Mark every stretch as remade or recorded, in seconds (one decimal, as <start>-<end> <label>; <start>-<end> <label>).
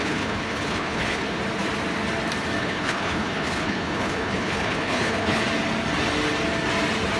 0.0-1.4 remade; 1.4-2.6 recorded; 2.6-5.4 remade; 5.4-7.2 recorded